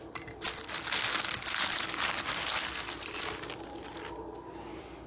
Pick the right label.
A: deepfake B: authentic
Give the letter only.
B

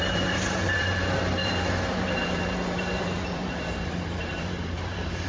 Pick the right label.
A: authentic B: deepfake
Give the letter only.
B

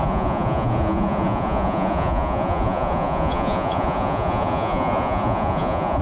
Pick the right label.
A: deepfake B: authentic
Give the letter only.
A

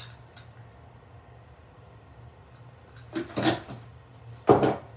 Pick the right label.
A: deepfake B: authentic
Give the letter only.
B